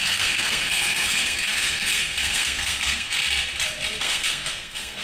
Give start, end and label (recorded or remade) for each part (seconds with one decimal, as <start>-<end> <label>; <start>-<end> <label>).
0.0-3.2 remade; 3.2-4.0 recorded; 4.0-5.0 remade